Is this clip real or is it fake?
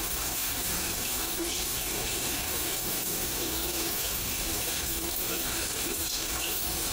fake